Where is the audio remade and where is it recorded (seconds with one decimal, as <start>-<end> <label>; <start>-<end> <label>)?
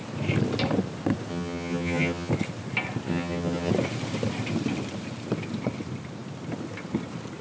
0.0-1.3 recorded; 1.3-2.3 remade; 2.3-3.1 recorded; 3.1-3.7 remade; 3.7-7.4 recorded